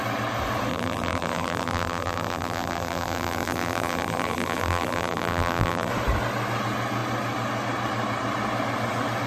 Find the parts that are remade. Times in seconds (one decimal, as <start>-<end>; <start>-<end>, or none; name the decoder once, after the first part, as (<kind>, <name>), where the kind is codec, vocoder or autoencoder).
0.7-5.9 (vocoder, BigVGAN v2)